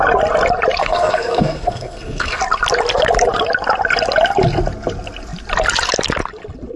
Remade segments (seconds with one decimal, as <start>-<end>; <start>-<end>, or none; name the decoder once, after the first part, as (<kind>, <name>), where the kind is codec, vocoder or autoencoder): 0.8-2.4 (codec, SNAC)